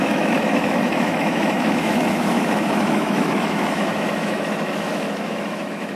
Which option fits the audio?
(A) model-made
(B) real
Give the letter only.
A